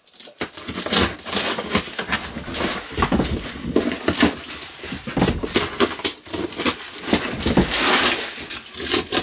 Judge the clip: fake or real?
real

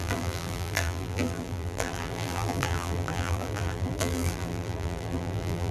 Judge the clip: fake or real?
fake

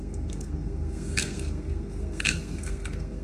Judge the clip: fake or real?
fake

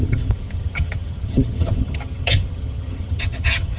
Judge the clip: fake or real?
fake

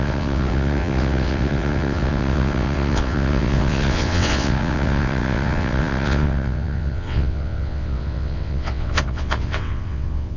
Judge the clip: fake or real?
fake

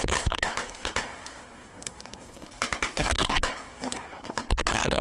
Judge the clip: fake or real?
fake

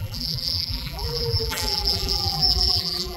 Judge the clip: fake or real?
fake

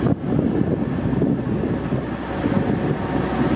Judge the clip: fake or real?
real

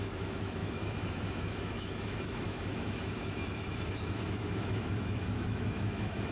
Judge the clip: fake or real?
fake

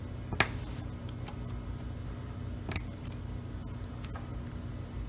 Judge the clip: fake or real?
real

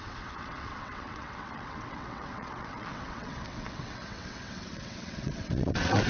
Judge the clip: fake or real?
fake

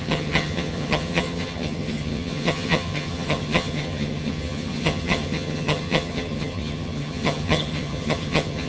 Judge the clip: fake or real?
fake